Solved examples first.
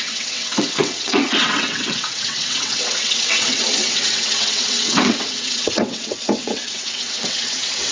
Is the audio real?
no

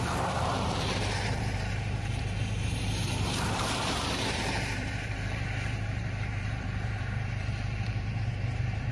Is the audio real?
no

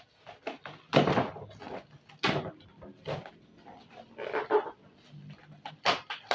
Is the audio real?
yes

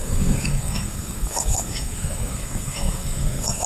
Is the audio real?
no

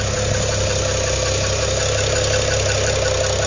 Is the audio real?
yes